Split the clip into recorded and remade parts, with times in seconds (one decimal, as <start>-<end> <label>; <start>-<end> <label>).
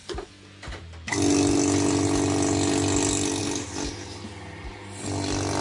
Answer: 0.0-5.6 recorded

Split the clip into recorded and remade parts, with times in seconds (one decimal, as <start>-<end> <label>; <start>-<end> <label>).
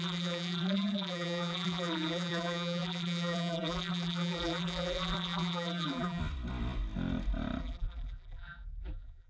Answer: 0.0-6.2 remade; 6.2-7.6 recorded; 7.6-9.3 remade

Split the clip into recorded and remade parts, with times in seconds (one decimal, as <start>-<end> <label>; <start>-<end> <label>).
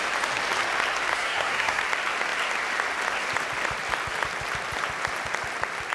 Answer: 0.0-1.1 recorded; 1.1-1.8 remade; 1.8-5.9 recorded